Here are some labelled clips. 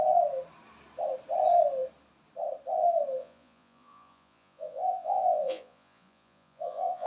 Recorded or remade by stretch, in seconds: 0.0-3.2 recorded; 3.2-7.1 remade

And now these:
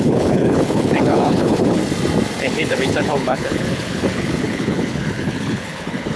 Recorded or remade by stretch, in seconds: 0.0-1.8 remade; 1.8-2.4 recorded; 2.4-6.2 remade

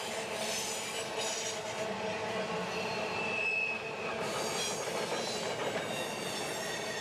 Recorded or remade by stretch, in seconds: 0.0-7.0 recorded

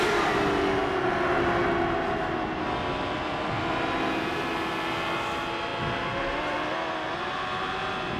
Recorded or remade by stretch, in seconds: 0.0-0.8 remade; 0.8-4.3 recorded; 4.3-5.7 remade; 5.7-7.1 recorded; 7.1-8.2 remade

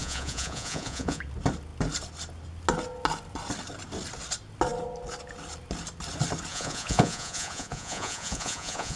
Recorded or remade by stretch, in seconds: 0.0-1.2 remade; 1.2-6.5 recorded; 6.5-9.0 remade